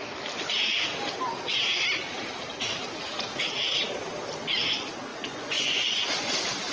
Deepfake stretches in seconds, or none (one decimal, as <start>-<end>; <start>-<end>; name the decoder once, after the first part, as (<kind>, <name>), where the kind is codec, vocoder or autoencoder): 5.1-6.3 (vocoder, Vocos)